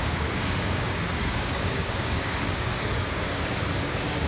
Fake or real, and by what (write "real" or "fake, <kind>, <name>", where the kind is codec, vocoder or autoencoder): fake, codec, DAC